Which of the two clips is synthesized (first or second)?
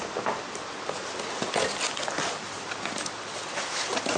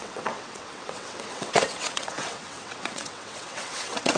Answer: second